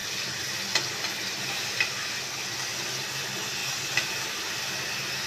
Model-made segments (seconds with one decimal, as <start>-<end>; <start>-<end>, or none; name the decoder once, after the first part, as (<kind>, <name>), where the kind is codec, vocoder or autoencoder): none